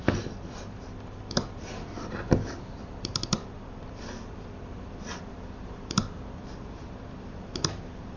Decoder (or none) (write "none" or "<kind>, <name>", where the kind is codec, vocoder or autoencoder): vocoder, BigVGAN v2